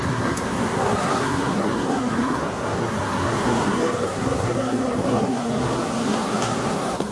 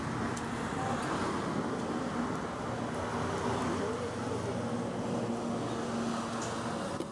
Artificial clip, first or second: first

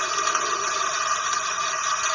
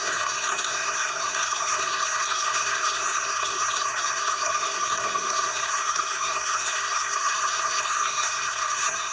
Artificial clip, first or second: second